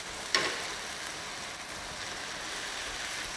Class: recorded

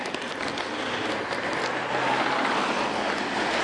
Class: recorded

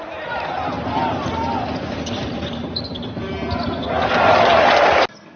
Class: recorded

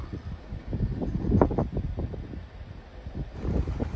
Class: recorded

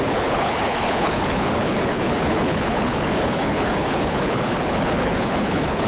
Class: remade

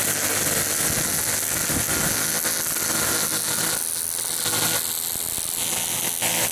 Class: recorded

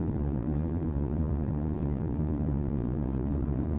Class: remade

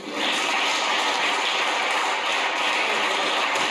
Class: recorded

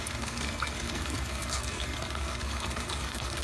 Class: remade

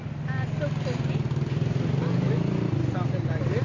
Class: recorded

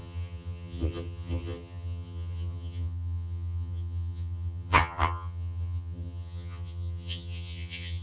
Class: remade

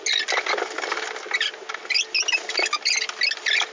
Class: recorded